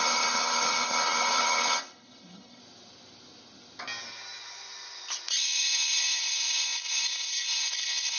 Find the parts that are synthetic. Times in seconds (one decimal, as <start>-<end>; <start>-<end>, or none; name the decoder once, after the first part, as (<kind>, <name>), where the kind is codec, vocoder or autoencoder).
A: 0.0-2.6 (codec, HILCodec); 5.3-8.2